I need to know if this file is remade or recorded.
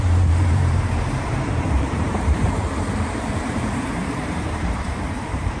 remade